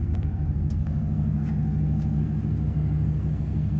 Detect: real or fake fake